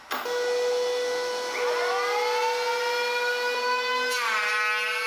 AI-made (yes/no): no